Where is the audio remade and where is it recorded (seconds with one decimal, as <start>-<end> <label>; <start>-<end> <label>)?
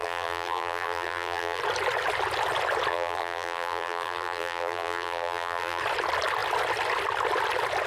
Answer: 0.0-1.6 remade; 1.6-2.9 recorded; 2.9-5.8 remade; 5.8-7.9 recorded